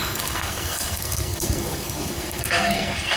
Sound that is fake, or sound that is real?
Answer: fake